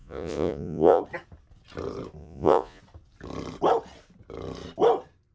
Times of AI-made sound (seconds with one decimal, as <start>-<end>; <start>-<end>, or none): 0.0-1.0; 2.2-2.8